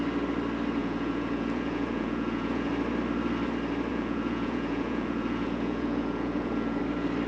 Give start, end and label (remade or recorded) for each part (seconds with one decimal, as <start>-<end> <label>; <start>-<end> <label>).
0.0-0.8 recorded; 0.8-2.7 remade; 2.7-3.9 recorded; 3.9-6.8 remade; 6.8-7.3 recorded